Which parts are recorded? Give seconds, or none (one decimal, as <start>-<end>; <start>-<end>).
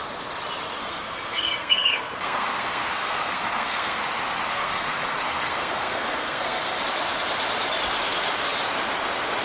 0.0-0.8; 4.0-4.5; 6.8-9.4